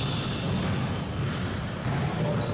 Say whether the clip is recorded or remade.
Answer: recorded